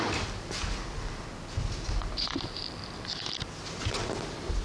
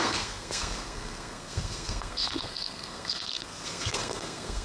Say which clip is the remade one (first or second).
second